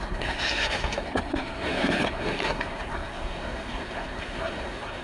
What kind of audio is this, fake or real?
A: fake